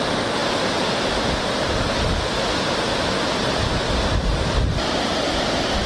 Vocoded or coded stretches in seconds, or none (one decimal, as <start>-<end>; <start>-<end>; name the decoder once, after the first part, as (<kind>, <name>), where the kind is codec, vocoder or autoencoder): none